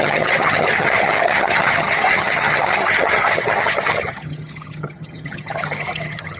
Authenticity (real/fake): fake